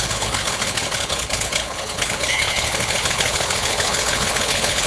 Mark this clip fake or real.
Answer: fake